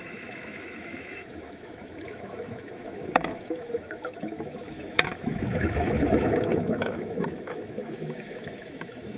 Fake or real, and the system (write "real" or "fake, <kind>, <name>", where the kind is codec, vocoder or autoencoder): fake, autoencoder, DAC-VAE